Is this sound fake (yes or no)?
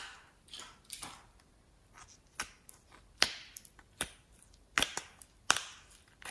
no